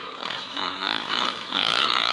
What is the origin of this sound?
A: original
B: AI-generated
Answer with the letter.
B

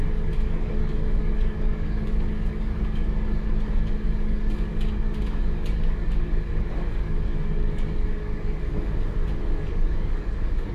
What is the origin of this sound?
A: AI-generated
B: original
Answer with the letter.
A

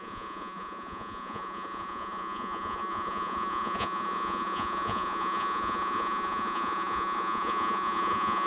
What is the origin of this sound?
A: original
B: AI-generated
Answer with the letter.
B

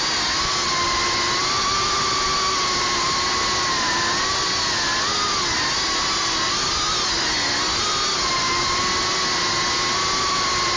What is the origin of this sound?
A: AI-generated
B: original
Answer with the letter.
B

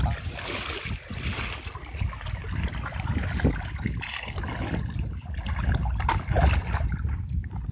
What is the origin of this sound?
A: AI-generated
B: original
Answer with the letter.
B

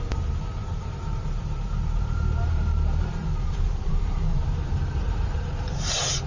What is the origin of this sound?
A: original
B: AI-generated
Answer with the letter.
B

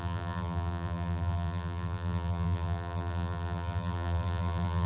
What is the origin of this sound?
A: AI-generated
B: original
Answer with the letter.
A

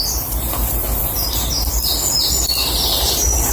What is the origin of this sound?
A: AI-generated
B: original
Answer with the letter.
B